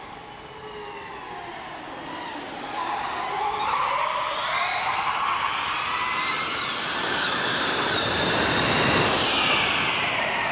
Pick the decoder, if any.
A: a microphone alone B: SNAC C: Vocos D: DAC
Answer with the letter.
A